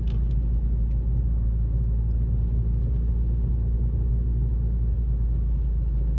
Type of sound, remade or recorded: recorded